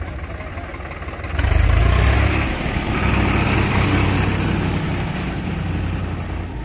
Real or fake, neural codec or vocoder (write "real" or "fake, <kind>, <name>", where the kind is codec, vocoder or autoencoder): real